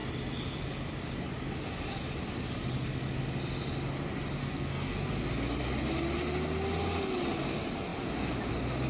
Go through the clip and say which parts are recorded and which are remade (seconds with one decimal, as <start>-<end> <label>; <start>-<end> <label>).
0.0-4.4 recorded; 4.4-5.1 remade; 5.1-8.9 recorded